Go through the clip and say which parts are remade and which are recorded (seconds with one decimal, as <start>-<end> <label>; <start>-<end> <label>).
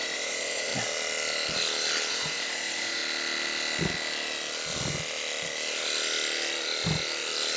0.0-0.7 remade; 0.7-2.1 recorded; 2.1-3.0 remade; 3.0-7.6 recorded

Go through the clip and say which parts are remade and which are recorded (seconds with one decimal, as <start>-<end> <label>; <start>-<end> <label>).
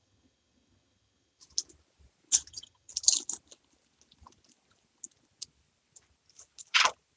0.0-1.4 remade; 1.4-2.5 recorded; 2.5-2.9 remade; 2.9-7.2 recorded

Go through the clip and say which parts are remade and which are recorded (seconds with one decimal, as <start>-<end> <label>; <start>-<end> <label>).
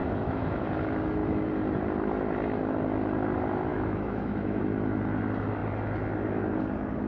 0.0-0.7 remade; 0.7-3.7 recorded; 3.7-4.6 remade; 4.6-7.1 recorded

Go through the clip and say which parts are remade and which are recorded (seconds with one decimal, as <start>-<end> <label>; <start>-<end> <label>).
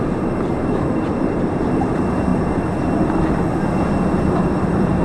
0.0-2.3 remade; 2.3-4.5 recorded; 4.5-5.0 remade